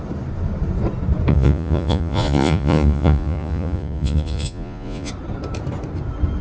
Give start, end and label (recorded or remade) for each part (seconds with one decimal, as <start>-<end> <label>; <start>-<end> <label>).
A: 0.0-1.3 recorded; 1.3-5.1 remade; 5.1-6.4 recorded